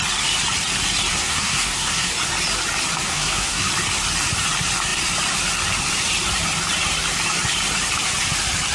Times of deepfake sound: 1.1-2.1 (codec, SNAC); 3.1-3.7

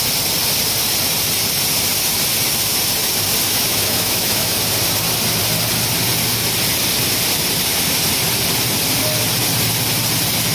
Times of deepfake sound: 3.5-4.6 (autoencoder, DAC-VAE)